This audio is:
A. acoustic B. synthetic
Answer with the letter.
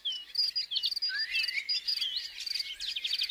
A